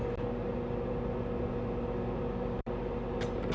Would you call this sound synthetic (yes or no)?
no